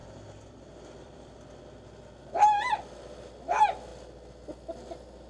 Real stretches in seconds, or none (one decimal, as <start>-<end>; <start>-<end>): 1.4-5.3